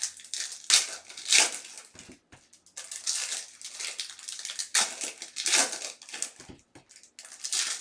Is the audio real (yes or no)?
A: yes